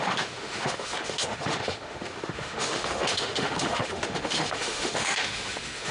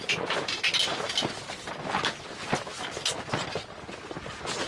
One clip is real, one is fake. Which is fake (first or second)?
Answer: first